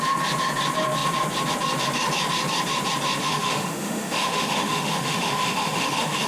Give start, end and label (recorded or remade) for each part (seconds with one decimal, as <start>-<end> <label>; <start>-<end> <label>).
0.0-3.2 recorded; 3.2-6.3 remade